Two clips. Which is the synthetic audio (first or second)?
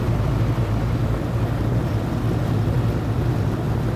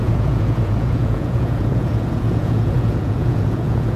second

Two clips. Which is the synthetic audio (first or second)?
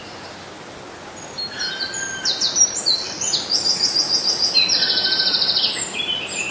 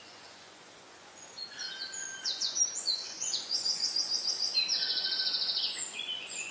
second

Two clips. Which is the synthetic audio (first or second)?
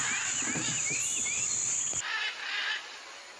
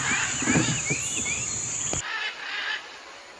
second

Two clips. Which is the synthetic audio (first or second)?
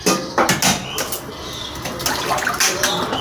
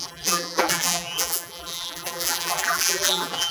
second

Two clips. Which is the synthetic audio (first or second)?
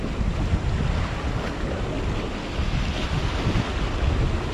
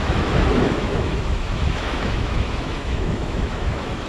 second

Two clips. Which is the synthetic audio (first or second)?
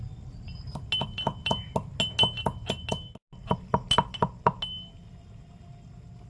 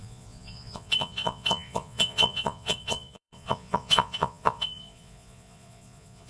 second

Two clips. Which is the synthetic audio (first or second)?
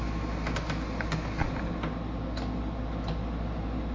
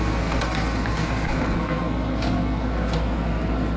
second